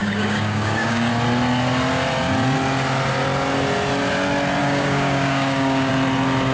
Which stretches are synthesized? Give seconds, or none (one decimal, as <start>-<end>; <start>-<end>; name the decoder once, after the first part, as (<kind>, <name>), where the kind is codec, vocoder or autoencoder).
0.0-1.1 (codec, DAC); 4.6-5.9